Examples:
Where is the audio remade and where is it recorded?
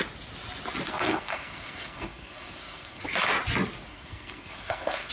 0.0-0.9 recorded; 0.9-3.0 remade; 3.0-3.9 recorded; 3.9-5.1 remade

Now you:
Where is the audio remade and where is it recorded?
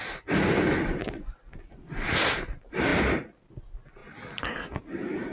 0.0-5.3 recorded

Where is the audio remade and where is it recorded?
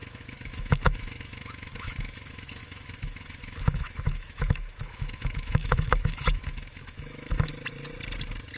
0.0-7.5 remade; 7.5-8.6 recorded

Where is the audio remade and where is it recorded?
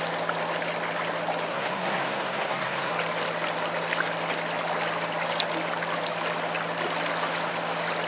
0.0-1.5 recorded; 1.5-2.9 remade; 2.9-8.1 recorded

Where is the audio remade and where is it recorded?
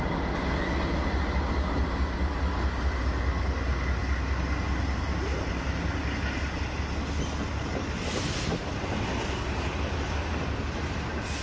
0.0-11.4 recorded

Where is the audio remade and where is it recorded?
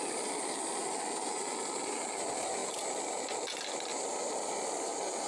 0.0-5.3 recorded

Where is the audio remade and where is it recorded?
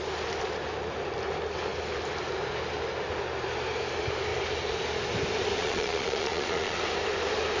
0.0-5.6 recorded; 5.6-6.8 remade; 6.8-7.6 recorded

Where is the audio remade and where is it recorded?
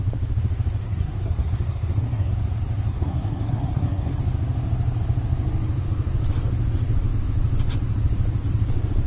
0.0-0.8 recorded; 0.8-2.3 remade; 2.3-2.9 recorded; 2.9-4.2 remade; 4.2-9.1 recorded